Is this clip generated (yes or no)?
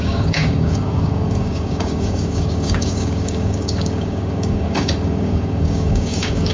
yes